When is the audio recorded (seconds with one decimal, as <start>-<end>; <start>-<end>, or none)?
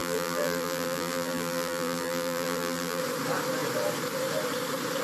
3.0-5.0